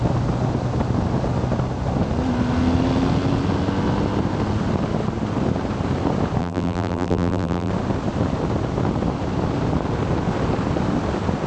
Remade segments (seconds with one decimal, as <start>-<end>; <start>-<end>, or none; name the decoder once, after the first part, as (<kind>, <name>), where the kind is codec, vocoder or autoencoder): 6.4-7.7 (vocoder, BigVGAN v2)